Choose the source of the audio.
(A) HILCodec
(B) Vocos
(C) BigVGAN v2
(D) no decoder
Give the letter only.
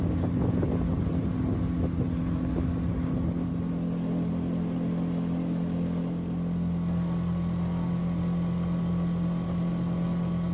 D